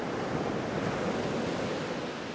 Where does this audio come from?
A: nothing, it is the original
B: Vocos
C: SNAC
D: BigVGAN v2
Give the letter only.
A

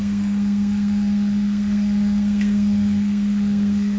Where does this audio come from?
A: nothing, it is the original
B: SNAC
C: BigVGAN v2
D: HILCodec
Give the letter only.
B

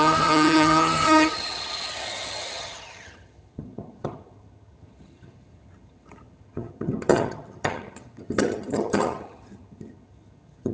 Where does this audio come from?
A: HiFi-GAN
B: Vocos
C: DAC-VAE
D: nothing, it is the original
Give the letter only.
A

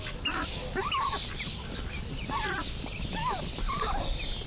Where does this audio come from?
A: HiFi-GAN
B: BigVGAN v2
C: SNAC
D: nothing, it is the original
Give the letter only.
D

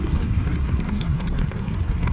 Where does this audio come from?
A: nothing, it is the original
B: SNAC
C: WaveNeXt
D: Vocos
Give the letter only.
B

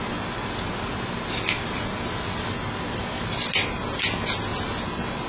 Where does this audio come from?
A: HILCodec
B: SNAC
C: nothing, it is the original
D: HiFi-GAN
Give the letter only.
C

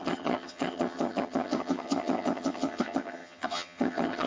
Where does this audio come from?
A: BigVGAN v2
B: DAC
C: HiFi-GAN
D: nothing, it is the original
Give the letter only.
C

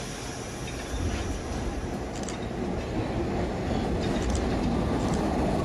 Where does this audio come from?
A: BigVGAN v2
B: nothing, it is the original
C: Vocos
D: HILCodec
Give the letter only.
B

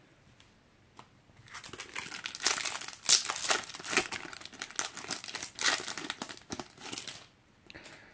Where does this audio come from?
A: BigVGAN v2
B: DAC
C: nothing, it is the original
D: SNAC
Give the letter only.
C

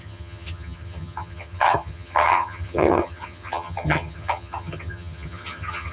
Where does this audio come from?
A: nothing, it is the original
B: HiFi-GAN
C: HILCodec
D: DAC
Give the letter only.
B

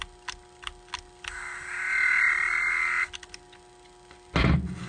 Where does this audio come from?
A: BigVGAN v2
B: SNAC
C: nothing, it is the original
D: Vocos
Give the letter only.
C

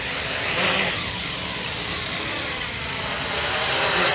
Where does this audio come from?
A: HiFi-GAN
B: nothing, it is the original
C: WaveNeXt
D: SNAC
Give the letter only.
B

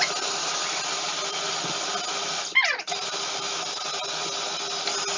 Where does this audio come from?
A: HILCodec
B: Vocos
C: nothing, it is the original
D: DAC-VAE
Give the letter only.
C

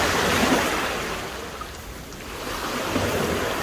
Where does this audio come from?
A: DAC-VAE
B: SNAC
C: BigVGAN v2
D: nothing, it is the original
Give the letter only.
D